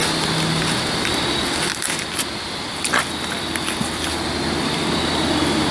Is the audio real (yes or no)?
yes